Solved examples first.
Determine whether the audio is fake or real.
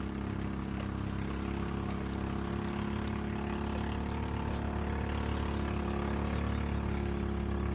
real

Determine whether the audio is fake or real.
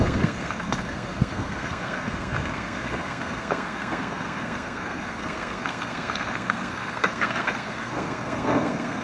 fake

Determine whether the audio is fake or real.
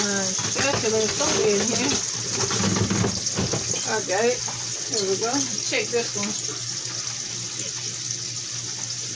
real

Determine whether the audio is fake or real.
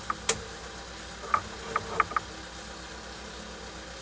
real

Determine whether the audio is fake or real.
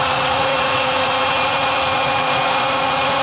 fake